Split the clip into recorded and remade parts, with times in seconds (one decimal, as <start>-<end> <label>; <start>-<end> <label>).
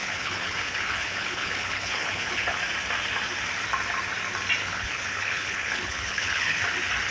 0.0-2.6 remade; 2.6-4.6 recorded; 4.6-6.6 remade; 6.6-7.1 recorded